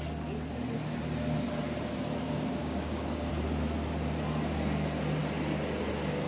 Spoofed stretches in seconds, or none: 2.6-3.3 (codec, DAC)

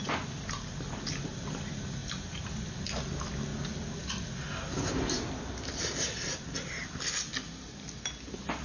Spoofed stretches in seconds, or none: none

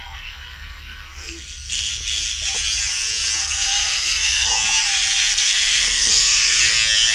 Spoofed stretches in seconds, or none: 0.0-1.9 (codec, SNAC); 3.4-4.5; 5.3-6.6

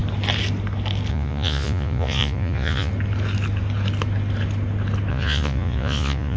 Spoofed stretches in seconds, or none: 1.1-2.9 (vocoder, Vocos); 5.1-6.4

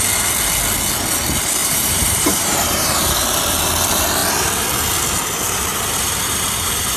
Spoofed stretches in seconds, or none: 1.6-3.0 (vocoder, BigVGAN v2); 5.7-7.0